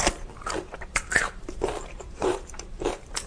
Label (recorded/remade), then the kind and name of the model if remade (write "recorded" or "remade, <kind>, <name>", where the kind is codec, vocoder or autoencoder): remade, vocoder, BigVGAN v2